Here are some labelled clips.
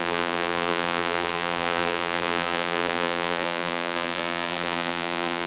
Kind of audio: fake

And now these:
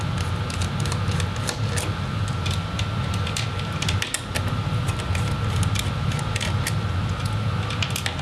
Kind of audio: real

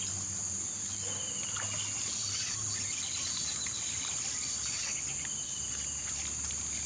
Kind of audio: real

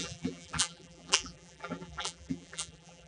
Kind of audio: fake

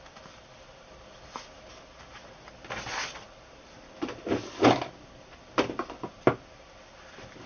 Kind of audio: real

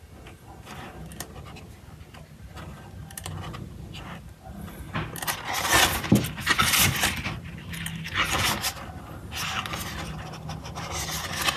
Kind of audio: real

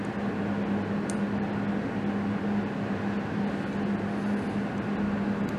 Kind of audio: real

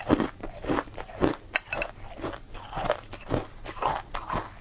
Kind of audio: real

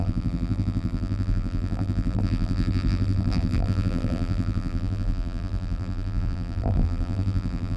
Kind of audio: fake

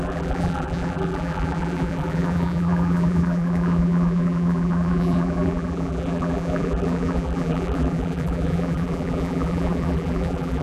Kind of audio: fake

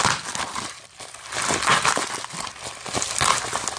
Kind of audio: real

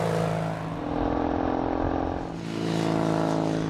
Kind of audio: real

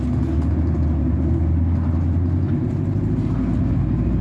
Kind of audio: real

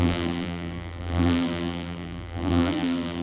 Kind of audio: fake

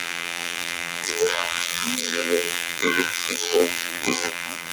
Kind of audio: fake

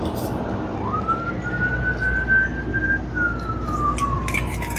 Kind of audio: real